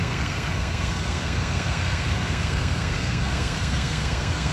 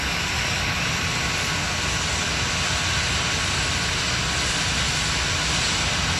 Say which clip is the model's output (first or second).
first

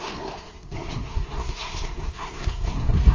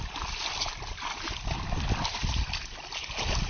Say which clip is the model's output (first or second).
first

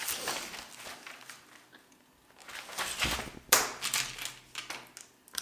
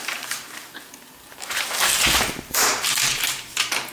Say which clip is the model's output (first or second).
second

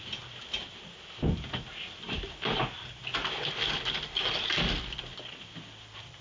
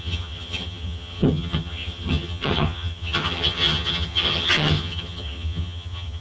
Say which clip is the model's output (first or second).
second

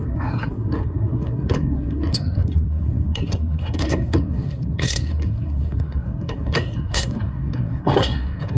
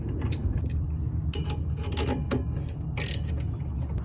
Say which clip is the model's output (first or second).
first